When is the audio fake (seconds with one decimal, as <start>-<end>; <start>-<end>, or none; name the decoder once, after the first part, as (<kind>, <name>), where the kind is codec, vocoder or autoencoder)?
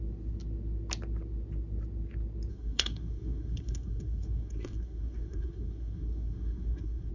2.5-7.1 (codec, SNAC)